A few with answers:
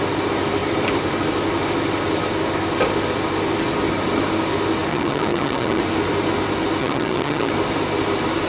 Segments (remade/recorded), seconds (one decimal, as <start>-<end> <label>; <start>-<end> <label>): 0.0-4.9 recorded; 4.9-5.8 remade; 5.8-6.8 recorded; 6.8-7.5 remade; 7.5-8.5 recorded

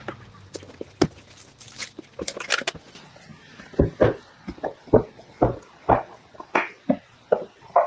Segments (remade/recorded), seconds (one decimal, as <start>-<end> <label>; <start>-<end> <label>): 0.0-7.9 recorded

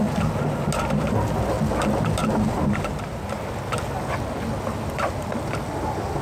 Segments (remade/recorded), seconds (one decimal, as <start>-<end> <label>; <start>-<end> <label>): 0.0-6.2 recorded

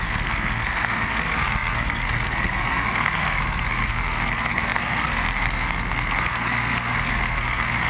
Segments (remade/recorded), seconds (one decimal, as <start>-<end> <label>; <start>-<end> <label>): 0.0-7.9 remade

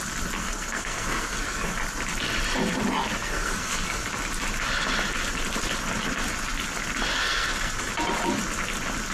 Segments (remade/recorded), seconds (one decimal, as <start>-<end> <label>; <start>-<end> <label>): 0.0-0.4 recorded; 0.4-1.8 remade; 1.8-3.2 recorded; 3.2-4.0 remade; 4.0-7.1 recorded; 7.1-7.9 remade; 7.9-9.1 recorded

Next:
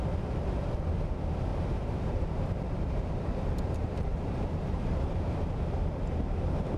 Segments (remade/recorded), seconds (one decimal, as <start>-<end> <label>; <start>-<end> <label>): 0.0-1.5 recorded; 1.5-5.5 remade; 5.5-6.8 recorded

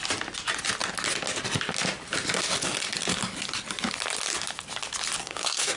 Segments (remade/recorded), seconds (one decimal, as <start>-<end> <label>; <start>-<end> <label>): 0.0-5.2 recorded; 5.2-5.8 remade